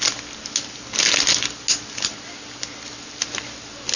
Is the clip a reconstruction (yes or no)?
no